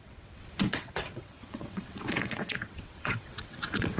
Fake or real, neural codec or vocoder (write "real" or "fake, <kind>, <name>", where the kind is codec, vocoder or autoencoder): fake, vocoder, WaveNeXt